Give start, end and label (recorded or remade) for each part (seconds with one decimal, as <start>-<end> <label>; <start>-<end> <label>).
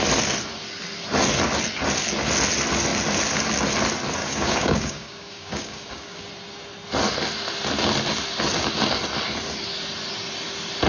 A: 0.0-4.2 recorded; 4.2-6.3 remade; 6.3-10.9 recorded